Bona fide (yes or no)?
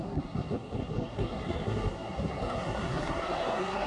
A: no